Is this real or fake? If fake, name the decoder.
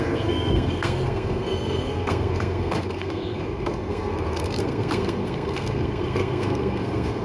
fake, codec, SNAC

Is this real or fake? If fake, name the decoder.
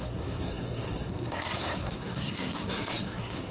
fake, codec, SNAC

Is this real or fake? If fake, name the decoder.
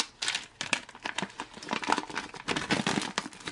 real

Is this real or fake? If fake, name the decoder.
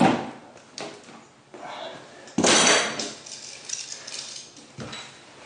real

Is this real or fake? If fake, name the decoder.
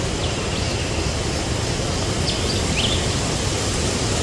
real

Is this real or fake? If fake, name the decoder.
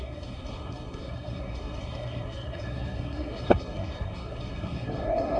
fake, codec, SNAC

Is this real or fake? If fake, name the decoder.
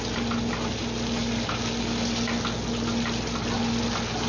real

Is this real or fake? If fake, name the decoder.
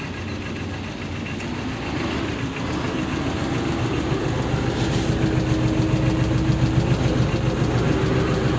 real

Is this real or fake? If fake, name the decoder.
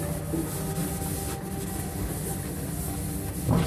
real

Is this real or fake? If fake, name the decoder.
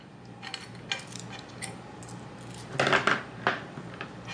real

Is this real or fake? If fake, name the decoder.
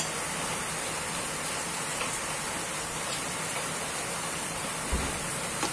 real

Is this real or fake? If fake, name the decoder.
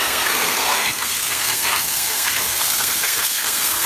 fake, codec, SNAC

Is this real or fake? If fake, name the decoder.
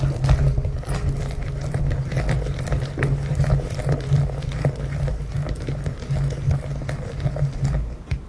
real